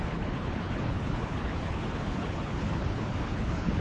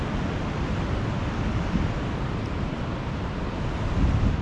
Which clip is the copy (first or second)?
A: first